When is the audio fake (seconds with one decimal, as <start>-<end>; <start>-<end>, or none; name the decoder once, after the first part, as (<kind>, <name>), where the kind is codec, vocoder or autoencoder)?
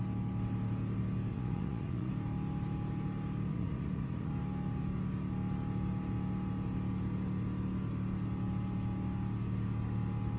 1.3-2.1 (vocoder, Vocos); 3.5-4.3